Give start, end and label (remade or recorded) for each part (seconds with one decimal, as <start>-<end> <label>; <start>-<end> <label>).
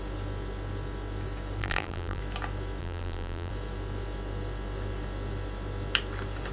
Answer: 0.0-1.6 recorded; 1.6-2.2 remade; 2.2-2.8 recorded; 2.8-3.5 remade; 3.5-6.5 recorded